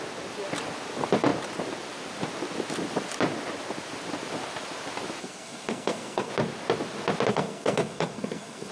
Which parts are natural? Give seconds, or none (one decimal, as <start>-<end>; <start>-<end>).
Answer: 0.0-5.2; 6.3-7.3